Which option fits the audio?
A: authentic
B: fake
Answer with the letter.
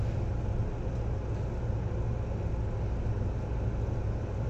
A